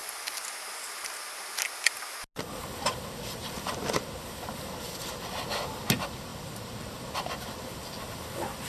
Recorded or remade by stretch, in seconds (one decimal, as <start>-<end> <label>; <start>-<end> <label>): 0.0-3.4 recorded; 3.4-4.0 remade; 4.0-6.3 recorded; 6.3-6.9 remade; 6.9-8.7 recorded